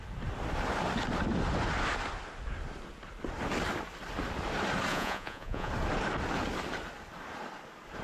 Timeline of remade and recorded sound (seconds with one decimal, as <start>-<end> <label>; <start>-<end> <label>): 0.0-4.9 recorded; 4.9-5.7 remade; 5.7-8.0 recorded